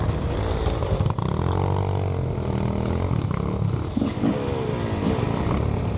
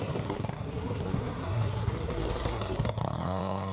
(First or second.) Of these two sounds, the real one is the first